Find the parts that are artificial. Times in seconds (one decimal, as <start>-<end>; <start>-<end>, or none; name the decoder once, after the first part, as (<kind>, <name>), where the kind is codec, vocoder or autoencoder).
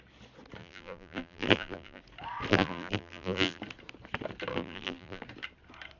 0.6-2.0 (vocoder, BigVGAN v2); 2.5-3.6; 4.5-5.2